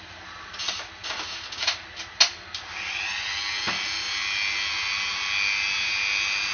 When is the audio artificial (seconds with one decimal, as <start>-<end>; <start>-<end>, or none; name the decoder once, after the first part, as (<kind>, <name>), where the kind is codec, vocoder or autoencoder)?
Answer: none